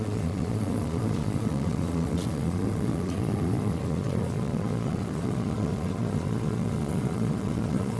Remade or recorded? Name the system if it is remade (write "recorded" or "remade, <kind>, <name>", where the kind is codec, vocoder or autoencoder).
remade, vocoder, Vocos